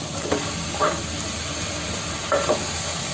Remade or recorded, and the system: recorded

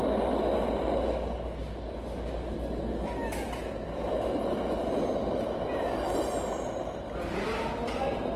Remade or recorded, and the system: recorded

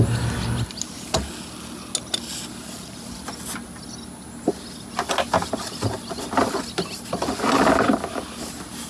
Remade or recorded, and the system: recorded